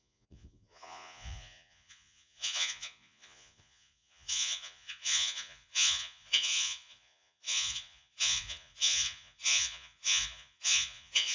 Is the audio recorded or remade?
remade